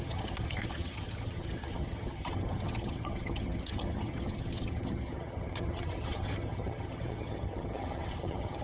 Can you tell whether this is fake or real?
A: fake